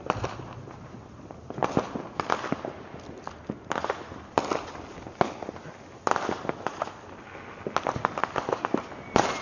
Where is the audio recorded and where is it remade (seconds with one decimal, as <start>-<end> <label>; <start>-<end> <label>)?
0.0-9.4 recorded